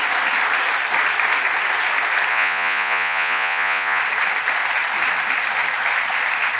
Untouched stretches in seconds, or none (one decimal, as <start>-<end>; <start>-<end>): 0.0-2.3; 4.0-6.6